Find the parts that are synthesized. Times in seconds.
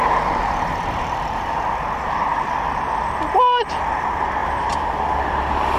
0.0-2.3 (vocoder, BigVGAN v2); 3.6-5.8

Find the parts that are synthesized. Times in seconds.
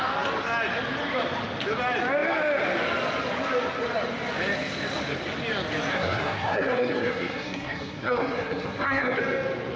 5.9-9.2 (codec, SNAC)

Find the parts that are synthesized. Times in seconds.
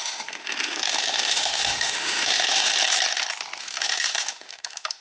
0.0-2.7 (autoencoder, DAC-VAE); 3.6-5.0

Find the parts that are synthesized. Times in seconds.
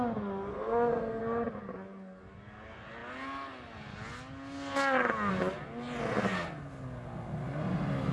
0.5-1.2 (codec, SNAC)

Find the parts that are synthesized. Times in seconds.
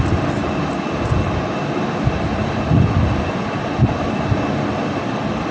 none